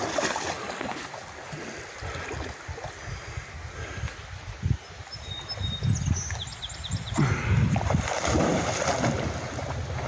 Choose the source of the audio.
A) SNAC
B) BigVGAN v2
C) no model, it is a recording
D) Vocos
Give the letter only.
C